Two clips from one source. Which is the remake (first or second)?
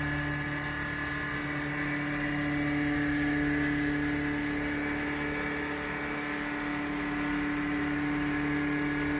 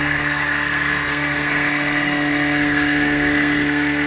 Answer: second